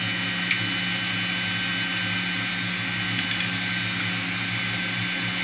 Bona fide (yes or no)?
yes